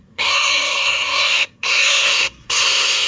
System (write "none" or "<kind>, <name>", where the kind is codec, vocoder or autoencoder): codec, SNAC